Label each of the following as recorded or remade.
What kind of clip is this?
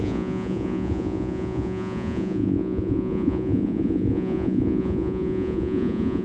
remade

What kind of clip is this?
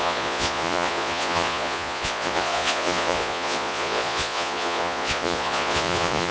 remade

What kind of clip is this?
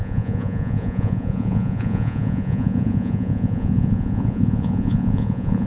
remade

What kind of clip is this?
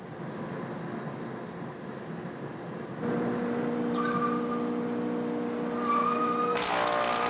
recorded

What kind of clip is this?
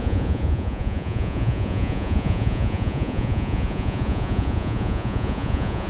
remade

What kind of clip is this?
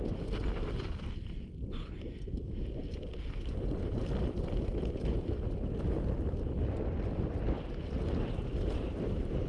recorded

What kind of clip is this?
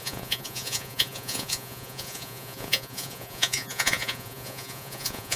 remade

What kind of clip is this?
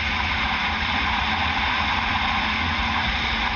remade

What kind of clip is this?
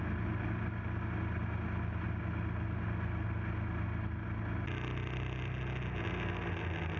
recorded